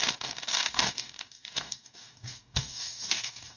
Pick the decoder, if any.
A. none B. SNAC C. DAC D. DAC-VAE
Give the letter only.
C